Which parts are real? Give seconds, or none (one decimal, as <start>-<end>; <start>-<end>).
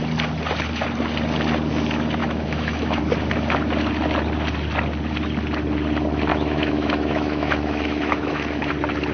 0.0-2.2; 3.0-6.3; 8.7-9.1